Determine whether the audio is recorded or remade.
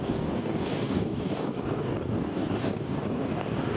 remade